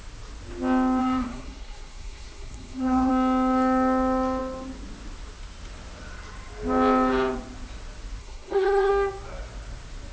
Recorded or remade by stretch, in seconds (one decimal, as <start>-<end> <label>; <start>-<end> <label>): 0.0-1.0 recorded; 1.0-3.1 remade; 3.1-8.2 recorded; 8.2-8.9 remade; 8.9-10.1 recorded